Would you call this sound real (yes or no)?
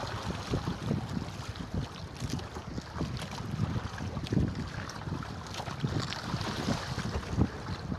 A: yes